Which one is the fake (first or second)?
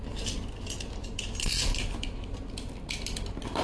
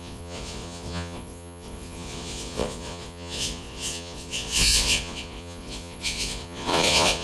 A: second